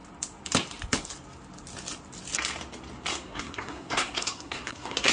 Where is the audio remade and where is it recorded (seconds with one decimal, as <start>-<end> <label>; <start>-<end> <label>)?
0.0-3.1 recorded; 3.1-5.1 remade